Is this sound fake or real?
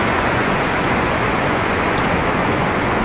fake